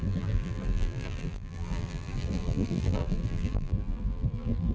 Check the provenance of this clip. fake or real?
fake